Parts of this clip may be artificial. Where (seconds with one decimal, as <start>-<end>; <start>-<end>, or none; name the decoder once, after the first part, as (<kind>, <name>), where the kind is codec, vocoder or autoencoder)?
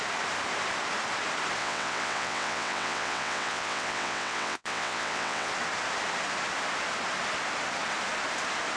1.6-5.5 (vocoder, WaveNeXt)